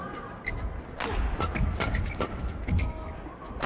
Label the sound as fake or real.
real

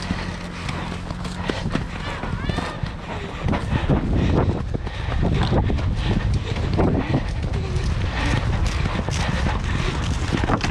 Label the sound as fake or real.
real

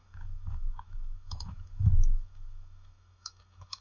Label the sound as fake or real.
fake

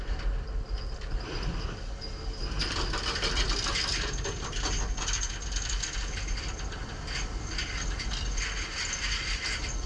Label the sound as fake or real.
real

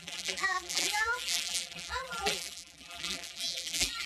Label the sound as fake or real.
fake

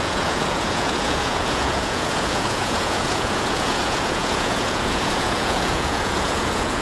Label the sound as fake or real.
fake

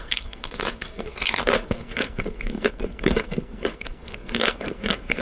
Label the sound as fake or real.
fake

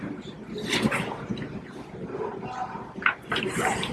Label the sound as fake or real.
real